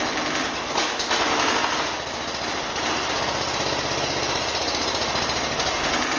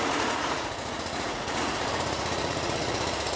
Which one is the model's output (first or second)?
second